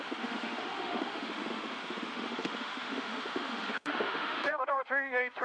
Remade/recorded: remade